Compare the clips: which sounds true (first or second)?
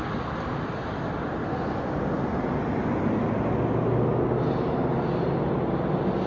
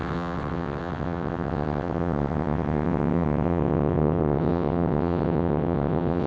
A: first